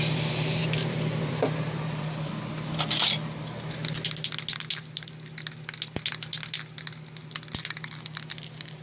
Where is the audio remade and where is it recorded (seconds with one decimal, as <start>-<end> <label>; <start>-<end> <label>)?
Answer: 0.0-0.6 recorded; 0.6-2.3 remade; 2.3-8.8 recorded